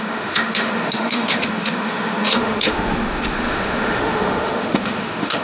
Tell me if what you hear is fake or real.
fake